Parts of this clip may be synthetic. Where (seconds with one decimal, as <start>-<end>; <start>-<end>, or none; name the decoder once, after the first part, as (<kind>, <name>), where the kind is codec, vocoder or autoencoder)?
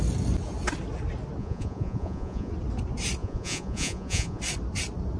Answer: 1.4-2.5 (vocoder, Vocos); 3.2-4.4